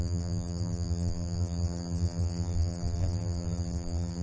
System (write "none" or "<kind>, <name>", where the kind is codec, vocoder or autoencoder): vocoder, BigVGAN v2